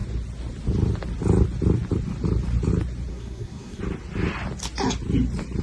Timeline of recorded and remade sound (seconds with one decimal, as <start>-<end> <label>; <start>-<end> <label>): 0.0-3.1 recorded; 3.1-3.8 remade; 3.8-5.6 recorded